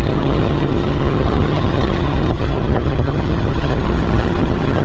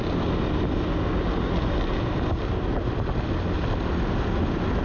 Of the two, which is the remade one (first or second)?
first